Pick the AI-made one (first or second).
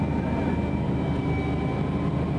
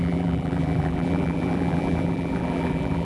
second